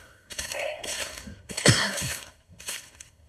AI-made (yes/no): yes